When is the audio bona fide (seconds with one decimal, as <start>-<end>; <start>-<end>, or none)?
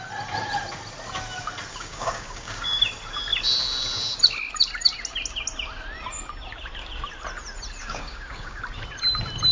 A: 0.0-1.7; 2.8-7.8; 8.6-9.5